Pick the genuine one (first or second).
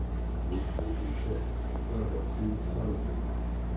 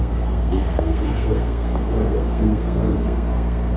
first